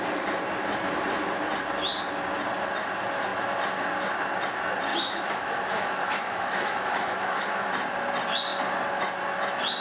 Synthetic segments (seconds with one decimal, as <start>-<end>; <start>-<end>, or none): 4.9-7.7